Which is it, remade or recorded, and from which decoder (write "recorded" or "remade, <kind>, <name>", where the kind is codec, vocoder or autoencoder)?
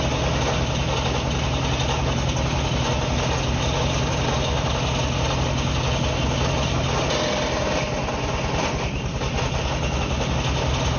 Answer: recorded